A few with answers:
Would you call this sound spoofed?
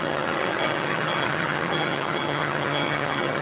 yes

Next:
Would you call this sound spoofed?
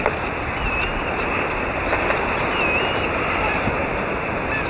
no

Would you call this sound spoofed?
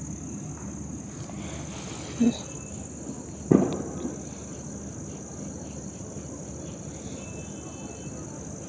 no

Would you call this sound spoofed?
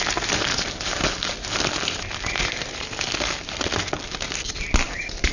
no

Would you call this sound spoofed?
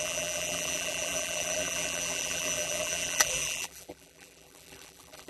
yes